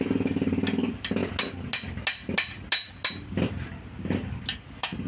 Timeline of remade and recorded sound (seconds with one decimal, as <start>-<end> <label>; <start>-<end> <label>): 0.0-5.1 recorded